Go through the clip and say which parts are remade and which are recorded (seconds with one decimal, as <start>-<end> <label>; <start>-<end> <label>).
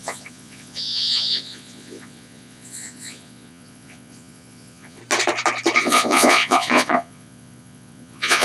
0.0-5.0 remade; 5.0-5.8 recorded; 5.8-8.4 remade